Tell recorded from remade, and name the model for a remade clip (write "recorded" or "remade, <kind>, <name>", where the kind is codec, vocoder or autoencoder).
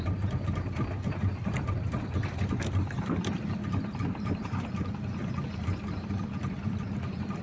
recorded